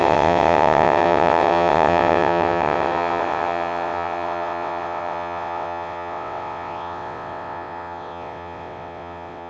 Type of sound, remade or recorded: remade